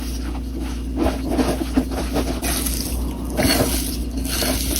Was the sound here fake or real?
real